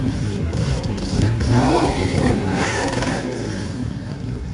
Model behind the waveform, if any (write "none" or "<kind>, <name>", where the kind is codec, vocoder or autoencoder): codec, SNAC